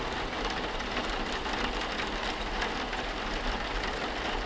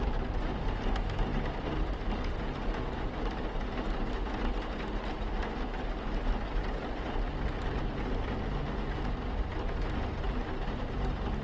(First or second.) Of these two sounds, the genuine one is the second